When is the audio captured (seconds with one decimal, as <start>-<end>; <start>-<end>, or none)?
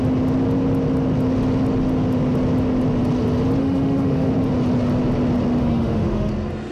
0.0-3.6; 4.3-5.6; 6.3-6.7